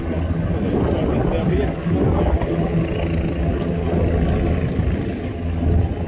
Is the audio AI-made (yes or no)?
no